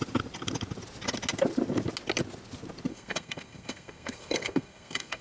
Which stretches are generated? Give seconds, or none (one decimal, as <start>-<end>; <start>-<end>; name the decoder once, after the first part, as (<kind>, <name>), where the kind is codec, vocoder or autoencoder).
2.9-5.2 (codec, SNAC)